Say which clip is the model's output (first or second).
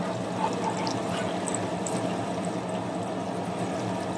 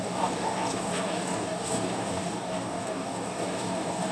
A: second